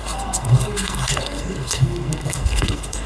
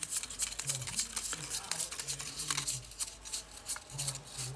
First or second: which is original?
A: second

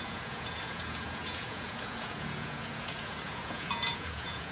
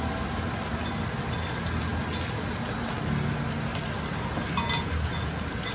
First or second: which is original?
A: second